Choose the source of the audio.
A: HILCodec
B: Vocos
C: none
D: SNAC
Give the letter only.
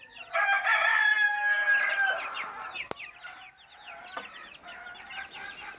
C